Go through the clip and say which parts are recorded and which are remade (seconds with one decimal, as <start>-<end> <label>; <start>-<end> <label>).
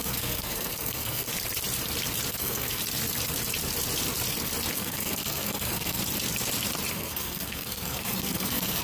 0.0-1.3 remade; 1.3-2.3 recorded; 2.3-2.8 remade; 2.8-4.7 recorded; 4.7-6.0 remade; 6.0-6.9 recorded; 6.9-8.8 remade